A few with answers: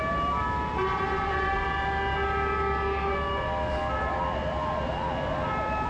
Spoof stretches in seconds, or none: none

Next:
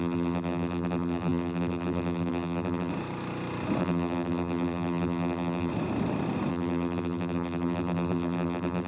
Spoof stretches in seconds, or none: 0.0-2.9; 3.8-5.7; 6.5-8.9

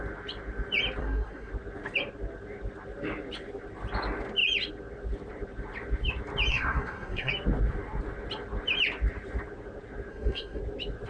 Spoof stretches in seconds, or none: 1.0-1.5; 6.5-7.3; 10.1-10.6